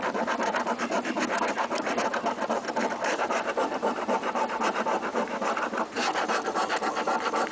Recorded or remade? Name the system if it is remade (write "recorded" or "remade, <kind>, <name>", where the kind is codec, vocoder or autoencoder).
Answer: remade, vocoder, BigVGAN v2